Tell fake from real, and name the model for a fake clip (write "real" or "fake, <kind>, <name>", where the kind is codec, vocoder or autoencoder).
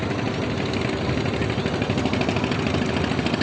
real